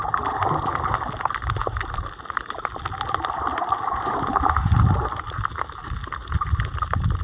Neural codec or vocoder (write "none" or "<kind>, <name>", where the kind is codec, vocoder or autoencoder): none